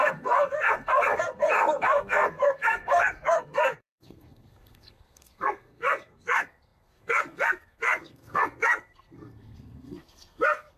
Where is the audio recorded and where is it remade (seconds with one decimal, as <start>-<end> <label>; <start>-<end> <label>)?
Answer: 0.0-10.8 remade